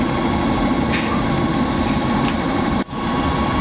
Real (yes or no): no